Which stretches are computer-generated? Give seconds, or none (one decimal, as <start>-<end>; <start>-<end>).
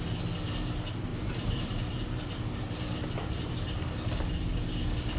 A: 1.1-3.5